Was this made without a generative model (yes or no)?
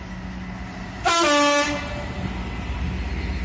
yes